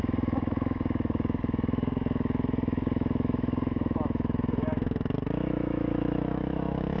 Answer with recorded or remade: remade